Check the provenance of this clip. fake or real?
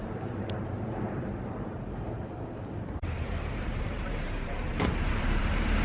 fake